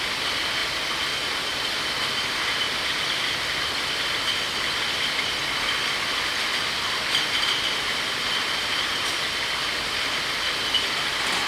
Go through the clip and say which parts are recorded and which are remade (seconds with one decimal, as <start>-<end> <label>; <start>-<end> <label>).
0.0-11.5 recorded